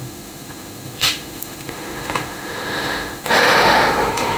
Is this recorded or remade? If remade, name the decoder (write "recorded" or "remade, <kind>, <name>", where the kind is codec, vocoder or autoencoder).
remade, autoencoder, DAC-VAE